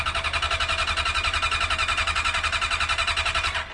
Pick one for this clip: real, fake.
real